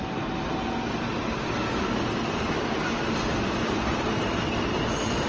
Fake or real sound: real